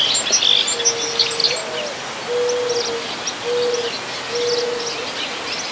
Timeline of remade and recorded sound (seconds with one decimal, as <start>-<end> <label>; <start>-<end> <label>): 0.0-5.7 recorded